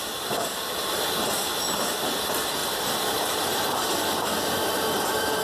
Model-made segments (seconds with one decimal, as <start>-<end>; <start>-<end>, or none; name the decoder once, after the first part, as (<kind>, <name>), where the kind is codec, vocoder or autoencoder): none